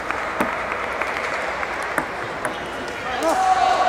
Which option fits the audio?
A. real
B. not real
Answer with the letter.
A